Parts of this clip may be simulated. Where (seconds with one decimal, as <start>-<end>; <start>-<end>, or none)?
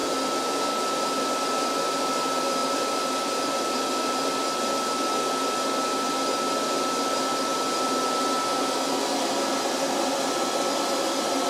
none